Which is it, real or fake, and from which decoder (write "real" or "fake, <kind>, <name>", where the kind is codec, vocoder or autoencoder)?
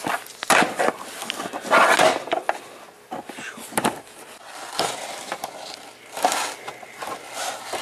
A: real